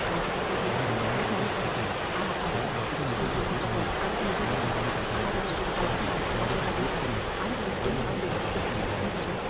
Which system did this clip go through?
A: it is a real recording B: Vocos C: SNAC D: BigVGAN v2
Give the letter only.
A